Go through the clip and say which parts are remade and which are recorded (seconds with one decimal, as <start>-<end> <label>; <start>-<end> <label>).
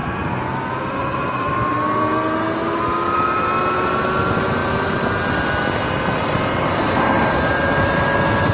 0.0-8.5 recorded